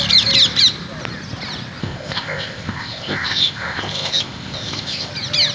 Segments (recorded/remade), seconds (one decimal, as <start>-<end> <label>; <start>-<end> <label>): 0.0-1.8 recorded; 1.8-5.1 remade; 5.1-5.5 recorded